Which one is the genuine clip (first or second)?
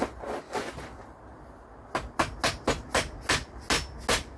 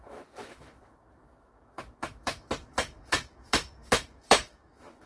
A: first